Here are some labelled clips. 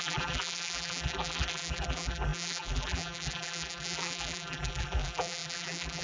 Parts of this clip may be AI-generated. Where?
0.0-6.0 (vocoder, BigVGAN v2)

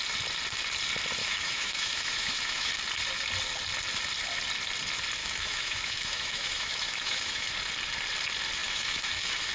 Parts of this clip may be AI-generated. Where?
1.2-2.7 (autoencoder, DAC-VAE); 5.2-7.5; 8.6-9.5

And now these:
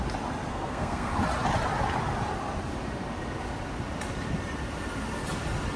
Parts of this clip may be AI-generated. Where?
0.5-1.1 (codec, SNAC)

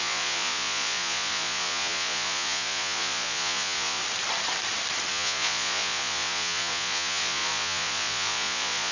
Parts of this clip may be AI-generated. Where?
0.0-4.0 (vocoder, Vocos); 5.1-8.9

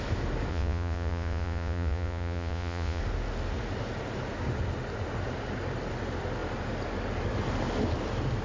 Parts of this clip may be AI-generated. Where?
0.5-3.0 (vocoder, Vocos)

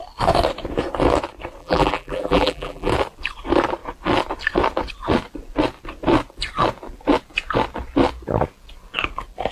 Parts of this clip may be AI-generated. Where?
1.6-2.9 (vocoder, BigVGAN v2)

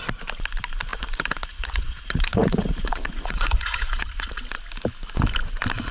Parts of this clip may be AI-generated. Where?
0.9-4.4 (vocoder, Vocos)

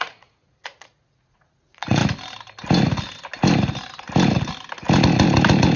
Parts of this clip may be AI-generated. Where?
0.0-2.0 (vocoder, Vocos)